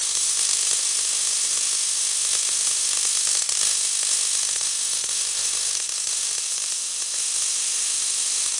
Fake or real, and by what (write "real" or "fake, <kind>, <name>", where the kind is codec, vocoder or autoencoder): fake, autoencoder, DAC-VAE